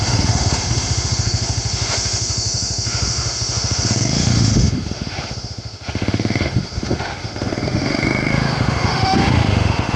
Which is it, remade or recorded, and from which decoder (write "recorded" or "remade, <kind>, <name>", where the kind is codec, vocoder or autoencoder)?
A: remade, autoencoder, DAC-VAE